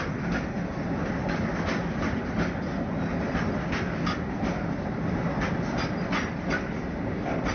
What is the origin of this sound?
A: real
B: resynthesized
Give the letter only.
A